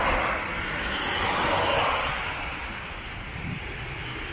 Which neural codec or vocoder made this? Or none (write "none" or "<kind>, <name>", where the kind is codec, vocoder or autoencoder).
none